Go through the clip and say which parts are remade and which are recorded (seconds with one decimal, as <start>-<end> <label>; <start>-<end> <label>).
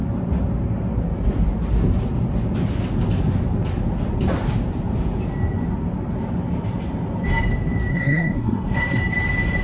0.0-7.9 recorded; 7.9-9.0 remade; 9.0-9.6 recorded